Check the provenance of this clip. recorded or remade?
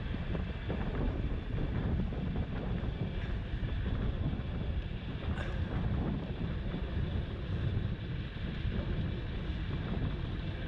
recorded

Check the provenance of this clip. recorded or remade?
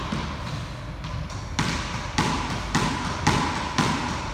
recorded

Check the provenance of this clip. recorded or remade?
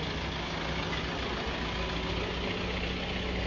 recorded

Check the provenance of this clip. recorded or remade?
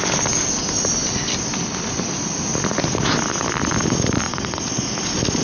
recorded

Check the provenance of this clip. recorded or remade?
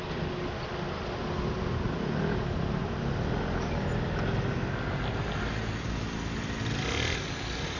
recorded